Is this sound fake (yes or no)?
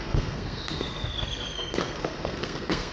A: yes